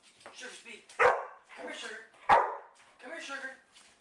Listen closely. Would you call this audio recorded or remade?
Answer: recorded